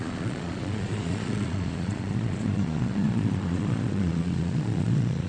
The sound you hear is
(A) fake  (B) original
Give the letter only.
A